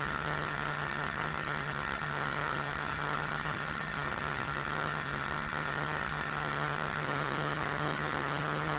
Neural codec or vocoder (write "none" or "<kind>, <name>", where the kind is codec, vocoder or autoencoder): vocoder, HiFi-GAN